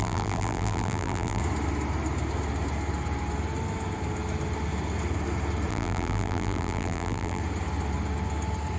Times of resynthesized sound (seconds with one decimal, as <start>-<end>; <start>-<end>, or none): 0.0-1.4; 5.7-7.4